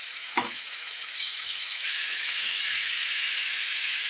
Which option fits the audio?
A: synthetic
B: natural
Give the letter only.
A